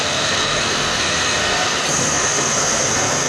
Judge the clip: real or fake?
fake